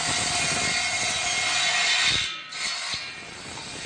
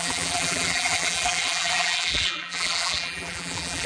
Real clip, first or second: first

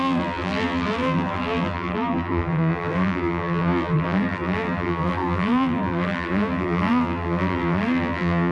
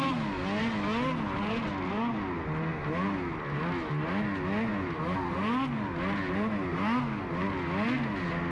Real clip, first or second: second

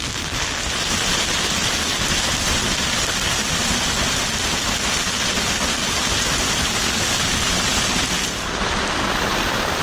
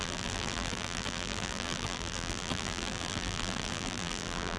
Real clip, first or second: first